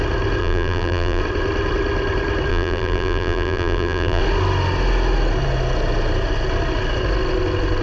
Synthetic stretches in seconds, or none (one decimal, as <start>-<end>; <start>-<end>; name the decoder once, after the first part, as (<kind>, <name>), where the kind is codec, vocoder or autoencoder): 0.4-1.2 (vocoder, BigVGAN v2); 2.5-4.2